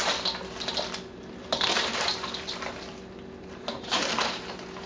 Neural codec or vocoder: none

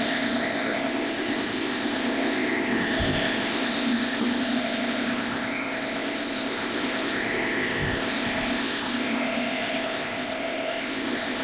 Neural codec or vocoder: codec, ZipCodec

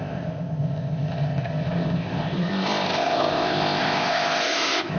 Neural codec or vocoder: codec, ZipCodec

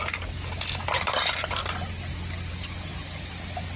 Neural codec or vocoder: none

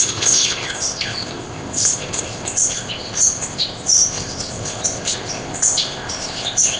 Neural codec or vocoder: codec, ZipCodec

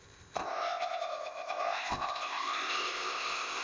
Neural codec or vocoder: codec, ZipCodec